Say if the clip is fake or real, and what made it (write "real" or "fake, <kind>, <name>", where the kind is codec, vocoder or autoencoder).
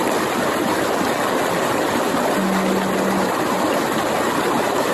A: real